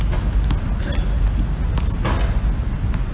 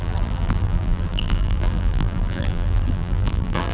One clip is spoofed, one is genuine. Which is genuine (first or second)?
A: first